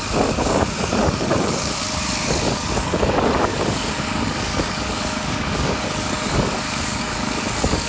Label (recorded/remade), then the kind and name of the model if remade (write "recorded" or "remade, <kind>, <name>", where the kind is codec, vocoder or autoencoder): remade, codec, DAC